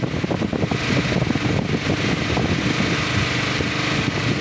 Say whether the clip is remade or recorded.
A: recorded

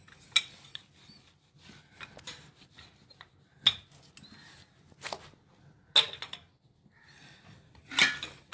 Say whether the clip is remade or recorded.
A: recorded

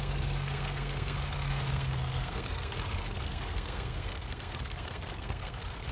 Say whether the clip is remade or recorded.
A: remade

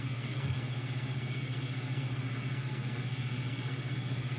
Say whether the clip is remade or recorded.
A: remade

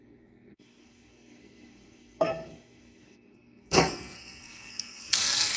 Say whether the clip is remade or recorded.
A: remade